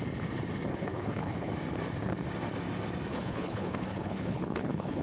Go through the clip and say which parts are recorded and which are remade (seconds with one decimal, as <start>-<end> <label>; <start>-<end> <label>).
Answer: 0.0-0.7 recorded; 0.7-1.5 remade; 1.5-3.1 recorded; 3.1-5.0 remade